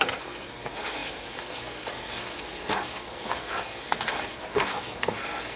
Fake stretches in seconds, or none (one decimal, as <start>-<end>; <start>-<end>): 0.0-5.6